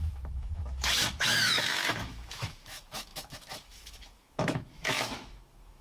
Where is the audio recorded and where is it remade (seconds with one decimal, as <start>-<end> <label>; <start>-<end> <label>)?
0.0-5.8 remade